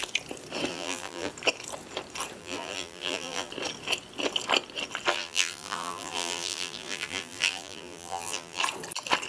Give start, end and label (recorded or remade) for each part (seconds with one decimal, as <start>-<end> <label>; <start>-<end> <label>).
0.0-0.7 recorded; 0.7-1.3 remade; 1.3-2.4 recorded; 2.4-3.5 remade; 3.5-5.1 recorded; 5.1-8.6 remade; 8.6-9.3 recorded